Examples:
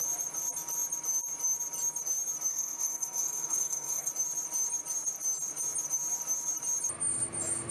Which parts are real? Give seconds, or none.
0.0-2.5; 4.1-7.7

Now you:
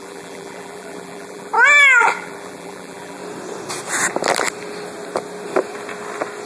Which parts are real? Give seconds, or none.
1.5-2.0; 3.2-6.5

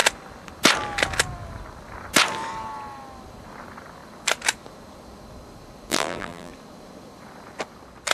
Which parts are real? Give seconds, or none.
0.0-5.9; 6.5-8.1

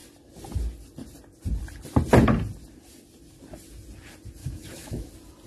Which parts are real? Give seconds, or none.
0.0-4.4; 5.1-5.5

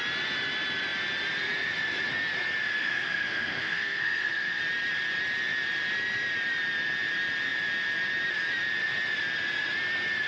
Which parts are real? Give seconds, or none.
0.0-2.8; 4.6-10.3

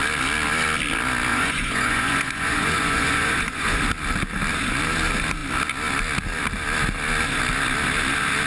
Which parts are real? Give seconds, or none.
0.0-1.3; 3.8-8.5

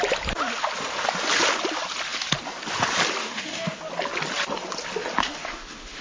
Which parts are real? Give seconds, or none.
0.0-3.2; 3.8-5.2

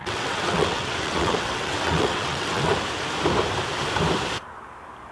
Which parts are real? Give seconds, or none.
2.7-5.1